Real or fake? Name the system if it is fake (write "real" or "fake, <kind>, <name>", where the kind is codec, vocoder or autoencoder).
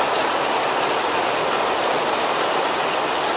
real